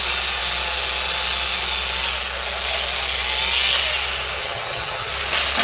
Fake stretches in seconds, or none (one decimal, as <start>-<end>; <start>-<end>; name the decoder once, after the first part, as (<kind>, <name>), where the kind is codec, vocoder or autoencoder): 4.4-5.1 (vocoder, HiFi-GAN)